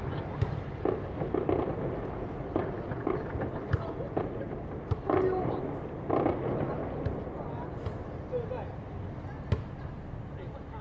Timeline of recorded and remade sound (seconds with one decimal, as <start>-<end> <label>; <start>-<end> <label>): 0.0-10.8 recorded